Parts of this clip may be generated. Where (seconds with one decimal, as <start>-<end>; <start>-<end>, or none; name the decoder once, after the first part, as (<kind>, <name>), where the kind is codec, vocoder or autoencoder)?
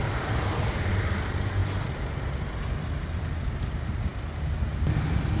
none